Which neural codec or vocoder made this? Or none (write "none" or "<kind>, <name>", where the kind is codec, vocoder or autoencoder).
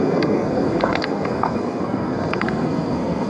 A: codec, SNAC